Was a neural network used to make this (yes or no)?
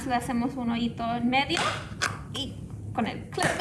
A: no